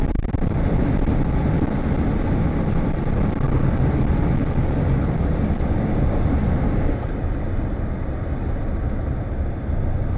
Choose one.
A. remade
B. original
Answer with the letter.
B